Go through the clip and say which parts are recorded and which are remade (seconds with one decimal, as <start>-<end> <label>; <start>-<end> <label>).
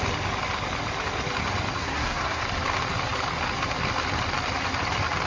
0.0-1.8 recorded; 1.8-2.4 remade; 2.4-5.3 recorded